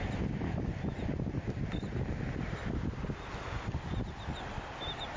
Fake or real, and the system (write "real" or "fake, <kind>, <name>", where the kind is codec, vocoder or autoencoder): real